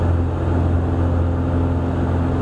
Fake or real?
real